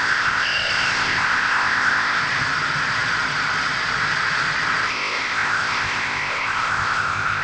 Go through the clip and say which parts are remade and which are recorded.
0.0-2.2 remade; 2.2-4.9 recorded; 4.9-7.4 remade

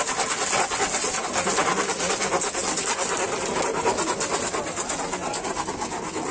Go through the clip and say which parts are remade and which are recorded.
0.0-6.3 recorded

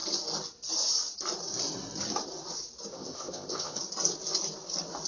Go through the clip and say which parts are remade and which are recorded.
0.0-2.9 recorded; 2.9-3.8 remade; 3.8-5.1 recorded

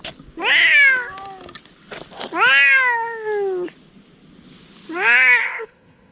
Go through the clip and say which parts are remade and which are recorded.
0.0-5.4 recorded; 5.4-6.1 remade

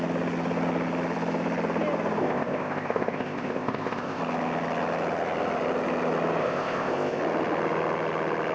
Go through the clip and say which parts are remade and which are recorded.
0.0-2.2 recorded; 2.2-4.2 remade; 4.2-6.4 recorded; 6.4-7.2 remade; 7.2-8.5 recorded

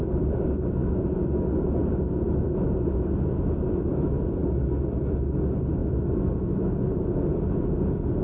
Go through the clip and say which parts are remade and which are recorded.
0.0-8.2 recorded

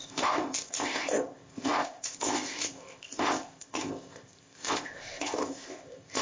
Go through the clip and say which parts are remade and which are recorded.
0.0-6.2 remade

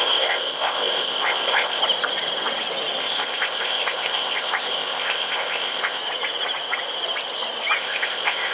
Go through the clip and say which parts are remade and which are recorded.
0.0-1.8 remade; 1.8-3.0 recorded; 3.0-6.0 remade; 6.0-7.8 recorded; 7.8-8.5 remade